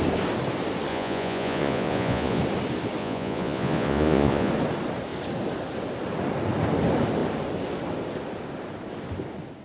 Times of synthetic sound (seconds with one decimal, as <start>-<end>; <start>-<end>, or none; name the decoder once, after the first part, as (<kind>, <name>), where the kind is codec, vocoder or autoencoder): 0.9-2.4 (vocoder, Vocos); 3.0-4.5